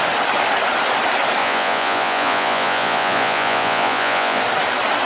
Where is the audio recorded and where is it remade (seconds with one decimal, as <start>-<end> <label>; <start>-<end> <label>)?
0.0-1.4 recorded; 1.4-4.4 remade; 4.4-5.1 recorded

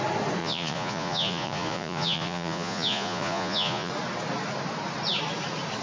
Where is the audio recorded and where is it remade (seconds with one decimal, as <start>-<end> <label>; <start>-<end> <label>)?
0.0-0.4 recorded; 0.4-3.9 remade; 3.9-5.8 recorded